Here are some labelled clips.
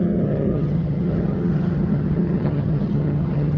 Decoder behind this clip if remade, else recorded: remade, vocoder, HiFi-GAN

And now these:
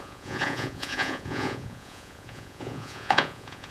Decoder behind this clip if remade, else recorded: remade, vocoder, Vocos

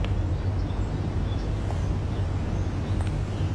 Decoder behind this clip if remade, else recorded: recorded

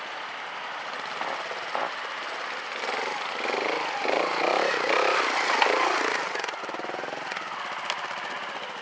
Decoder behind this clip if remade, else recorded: recorded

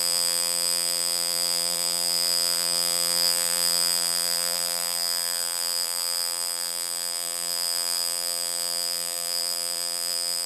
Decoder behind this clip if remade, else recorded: remade, vocoder, BigVGAN v2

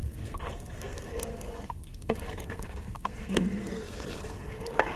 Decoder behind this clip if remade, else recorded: remade, codec, SNAC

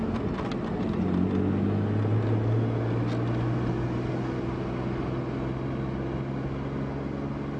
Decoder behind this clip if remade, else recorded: recorded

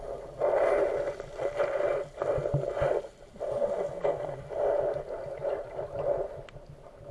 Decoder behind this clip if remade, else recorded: recorded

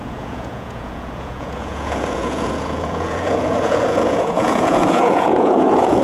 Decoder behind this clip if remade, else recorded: remade, vocoder, Vocos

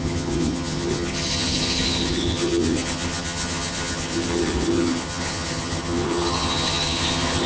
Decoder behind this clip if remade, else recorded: remade, vocoder, HiFi-GAN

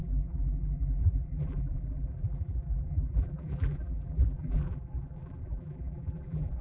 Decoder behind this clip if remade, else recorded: remade, vocoder, BigVGAN v2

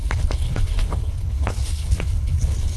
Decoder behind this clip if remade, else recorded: remade, codec, HILCodec